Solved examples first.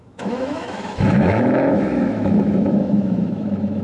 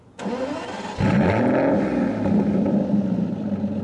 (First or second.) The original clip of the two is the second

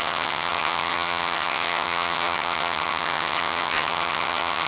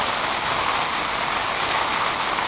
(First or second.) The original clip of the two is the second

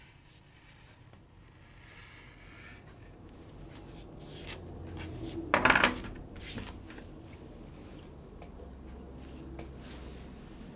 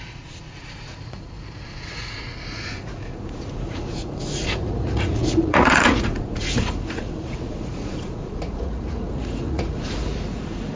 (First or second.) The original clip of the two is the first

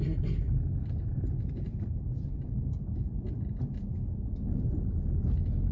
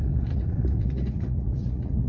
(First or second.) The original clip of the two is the first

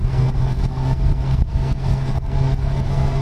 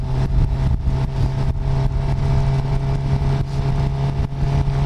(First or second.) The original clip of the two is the second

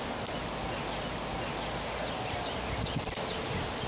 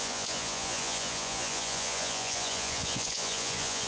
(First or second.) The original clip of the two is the first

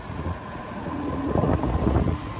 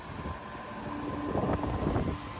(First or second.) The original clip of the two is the second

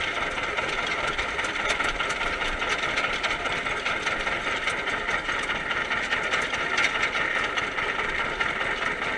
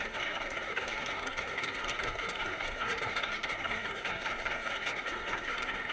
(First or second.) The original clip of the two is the first